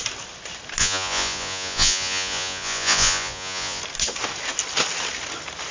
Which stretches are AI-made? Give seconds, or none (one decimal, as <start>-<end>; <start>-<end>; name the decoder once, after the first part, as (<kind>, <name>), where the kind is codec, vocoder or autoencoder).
0.8-3.8 (vocoder, Vocos)

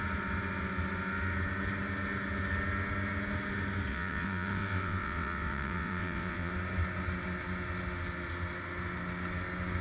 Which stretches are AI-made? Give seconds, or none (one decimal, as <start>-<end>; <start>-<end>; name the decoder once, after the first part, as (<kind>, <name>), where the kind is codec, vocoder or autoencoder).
3.9-6.5 (vocoder, WaveNeXt)

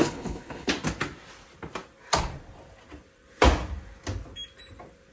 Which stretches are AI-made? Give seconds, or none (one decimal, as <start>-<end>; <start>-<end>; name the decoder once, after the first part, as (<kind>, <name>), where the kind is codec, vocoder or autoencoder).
0.0-0.7 (codec, HILCodec)

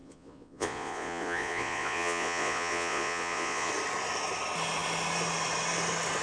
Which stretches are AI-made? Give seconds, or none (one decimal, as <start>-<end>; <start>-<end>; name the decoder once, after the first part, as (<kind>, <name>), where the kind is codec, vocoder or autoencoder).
0.0-3.7 (vocoder, Vocos)